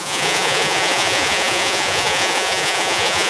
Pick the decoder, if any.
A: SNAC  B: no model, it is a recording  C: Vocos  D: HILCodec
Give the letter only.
C